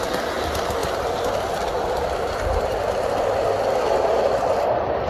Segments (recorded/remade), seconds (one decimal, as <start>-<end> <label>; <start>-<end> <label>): 0.0-5.1 recorded